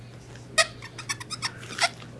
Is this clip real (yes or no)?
yes